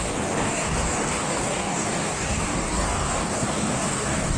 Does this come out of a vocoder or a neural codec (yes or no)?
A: yes